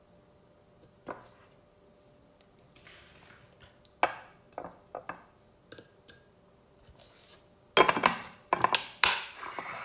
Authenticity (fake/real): real